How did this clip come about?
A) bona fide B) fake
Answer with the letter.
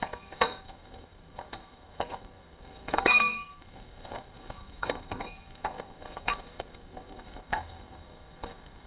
B